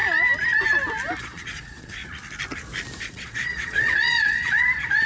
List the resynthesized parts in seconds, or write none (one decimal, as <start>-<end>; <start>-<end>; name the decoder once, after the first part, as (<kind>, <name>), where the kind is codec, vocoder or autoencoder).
1.2-2.0 (vocoder, Vocos); 3.0-5.1